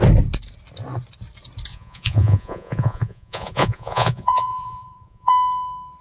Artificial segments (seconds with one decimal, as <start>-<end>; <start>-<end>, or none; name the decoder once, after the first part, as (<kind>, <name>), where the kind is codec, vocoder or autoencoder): 1.7-5.3 (vocoder, Vocos)